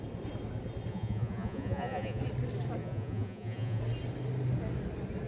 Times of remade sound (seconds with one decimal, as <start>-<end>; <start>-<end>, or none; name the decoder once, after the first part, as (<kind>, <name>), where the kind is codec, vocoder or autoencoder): 0.9-2.2 (vocoder, Vocos); 2.8-3.8